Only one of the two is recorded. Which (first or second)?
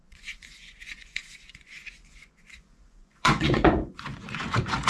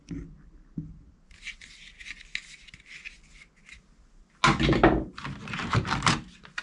second